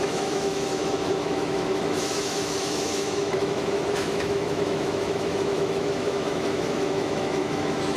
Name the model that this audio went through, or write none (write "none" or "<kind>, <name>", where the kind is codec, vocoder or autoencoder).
autoencoder, DAC-VAE